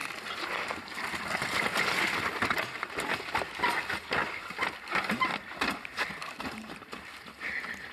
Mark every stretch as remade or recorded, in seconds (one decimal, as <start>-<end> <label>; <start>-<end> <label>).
0.0-7.9 recorded